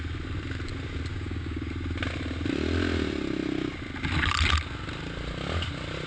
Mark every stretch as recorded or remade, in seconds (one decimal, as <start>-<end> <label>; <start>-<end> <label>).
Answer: 0.0-1.1 recorded; 1.1-1.7 remade; 1.7-6.1 recorded